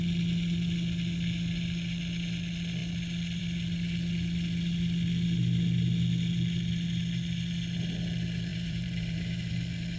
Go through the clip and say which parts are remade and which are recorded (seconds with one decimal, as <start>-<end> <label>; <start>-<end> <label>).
0.0-8.5 recorded; 8.5-9.5 remade; 9.5-10.0 recorded